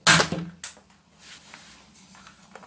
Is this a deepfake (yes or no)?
no